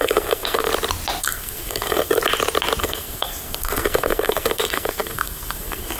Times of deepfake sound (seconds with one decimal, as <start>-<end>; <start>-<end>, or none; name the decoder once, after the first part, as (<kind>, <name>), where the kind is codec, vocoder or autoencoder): 0.0-0.7 (codec, SNAC); 1.2-2.2; 2.8-6.0

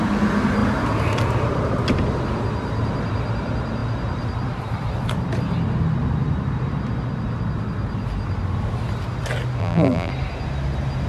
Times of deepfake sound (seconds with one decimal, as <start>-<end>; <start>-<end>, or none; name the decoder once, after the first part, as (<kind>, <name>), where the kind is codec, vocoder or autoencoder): 9.6-10.1 (vocoder, BigVGAN v2)